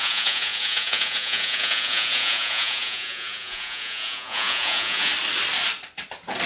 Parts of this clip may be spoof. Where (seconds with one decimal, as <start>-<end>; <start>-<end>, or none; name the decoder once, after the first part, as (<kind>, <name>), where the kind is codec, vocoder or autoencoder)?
0.0-5.1 (vocoder, Vocos)